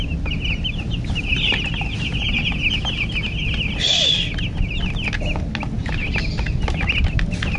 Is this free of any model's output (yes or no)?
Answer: yes